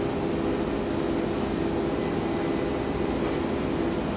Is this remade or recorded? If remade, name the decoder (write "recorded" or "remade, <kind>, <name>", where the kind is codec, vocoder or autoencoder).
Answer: recorded